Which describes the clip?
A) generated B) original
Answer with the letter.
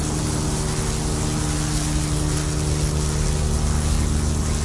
B